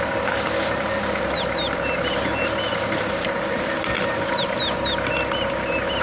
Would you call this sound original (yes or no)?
yes